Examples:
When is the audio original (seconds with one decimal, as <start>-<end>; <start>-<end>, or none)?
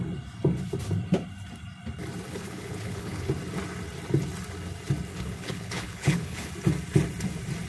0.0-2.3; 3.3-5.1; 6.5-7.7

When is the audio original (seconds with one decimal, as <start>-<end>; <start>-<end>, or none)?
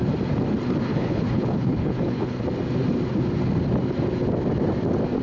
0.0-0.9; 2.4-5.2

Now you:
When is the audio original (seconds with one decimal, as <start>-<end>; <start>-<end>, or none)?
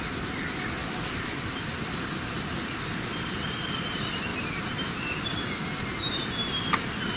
0.0-7.2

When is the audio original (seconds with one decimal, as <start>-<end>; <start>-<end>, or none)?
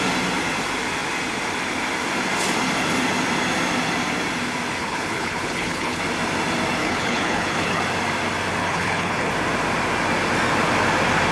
0.0-4.8; 6.0-6.8; 7.8-8.6; 9.3-11.3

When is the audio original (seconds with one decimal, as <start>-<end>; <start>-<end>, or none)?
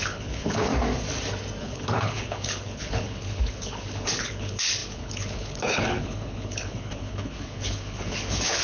0.7-1.6